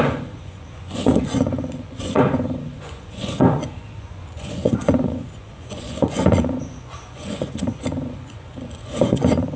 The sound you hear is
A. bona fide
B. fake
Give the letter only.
B